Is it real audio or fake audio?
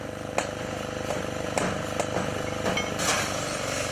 real